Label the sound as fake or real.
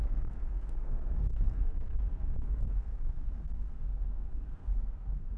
fake